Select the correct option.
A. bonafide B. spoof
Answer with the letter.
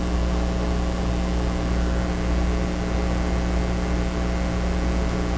A